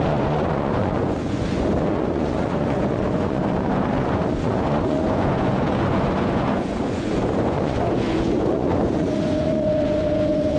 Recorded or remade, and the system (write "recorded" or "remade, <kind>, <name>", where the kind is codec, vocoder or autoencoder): remade, vocoder, Vocos